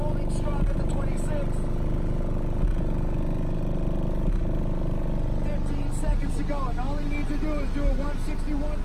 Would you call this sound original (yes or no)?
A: yes